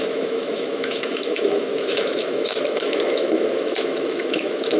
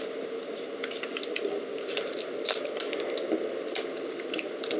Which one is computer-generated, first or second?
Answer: first